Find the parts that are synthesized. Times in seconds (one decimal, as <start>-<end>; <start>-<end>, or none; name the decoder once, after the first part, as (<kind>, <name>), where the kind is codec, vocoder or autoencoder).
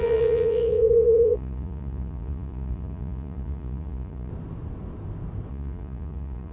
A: 0.0-4.3 (vocoder, Vocos); 5.5-6.5